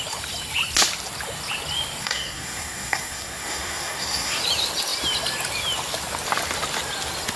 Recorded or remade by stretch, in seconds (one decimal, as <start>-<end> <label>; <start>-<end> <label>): 0.0-2.0 recorded; 2.0-4.4 remade; 4.4-7.4 recorded

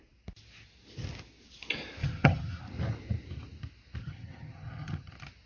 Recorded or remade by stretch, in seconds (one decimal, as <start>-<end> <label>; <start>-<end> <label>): 0.0-2.0 recorded; 2.0-2.6 remade; 2.6-4.0 recorded; 4.0-5.1 remade; 5.1-5.5 recorded

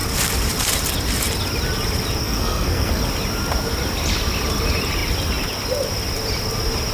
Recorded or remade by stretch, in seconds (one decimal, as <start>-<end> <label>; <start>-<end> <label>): 0.0-2.2 recorded; 2.2-3.0 remade; 3.0-6.9 recorded

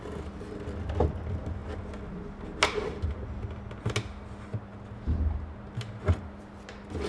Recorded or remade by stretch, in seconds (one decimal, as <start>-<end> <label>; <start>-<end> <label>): 0.0-7.1 recorded

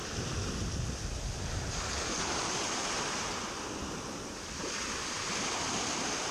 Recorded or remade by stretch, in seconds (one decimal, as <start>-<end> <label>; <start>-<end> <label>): 0.0-6.3 recorded

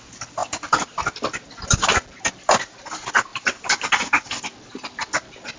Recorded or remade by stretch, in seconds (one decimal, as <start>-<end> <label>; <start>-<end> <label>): 0.0-5.6 recorded